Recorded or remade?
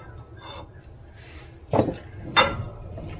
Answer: recorded